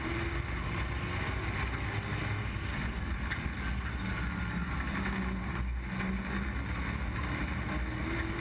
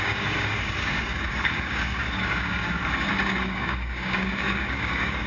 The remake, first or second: second